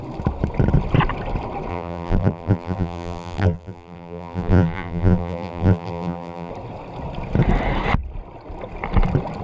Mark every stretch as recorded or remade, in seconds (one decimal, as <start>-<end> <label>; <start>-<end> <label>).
0.0-1.7 recorded; 1.7-6.5 remade; 6.5-9.4 recorded